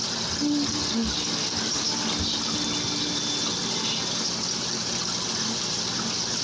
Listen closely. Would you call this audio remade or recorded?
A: recorded